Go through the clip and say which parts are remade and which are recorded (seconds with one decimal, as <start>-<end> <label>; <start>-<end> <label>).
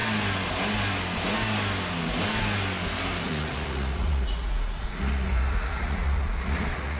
0.0-3.2 recorded; 3.2-7.0 remade